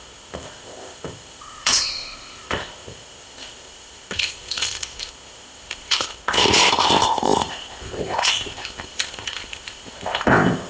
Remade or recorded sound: remade